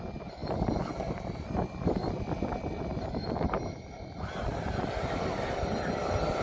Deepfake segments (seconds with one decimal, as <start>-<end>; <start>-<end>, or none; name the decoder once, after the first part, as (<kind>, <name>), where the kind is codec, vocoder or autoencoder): none